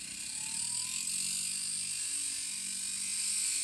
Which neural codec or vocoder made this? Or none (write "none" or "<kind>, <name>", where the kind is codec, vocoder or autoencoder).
none